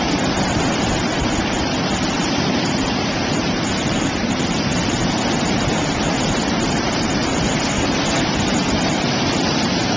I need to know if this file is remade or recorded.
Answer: remade